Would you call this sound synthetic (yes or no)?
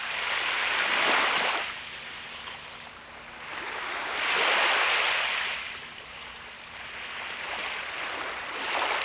no